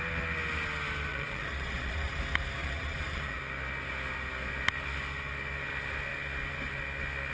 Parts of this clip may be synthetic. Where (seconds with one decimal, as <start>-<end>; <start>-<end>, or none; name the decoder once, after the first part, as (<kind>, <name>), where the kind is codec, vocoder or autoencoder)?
1.1-2.2 (vocoder, Vocos); 2.6-3.4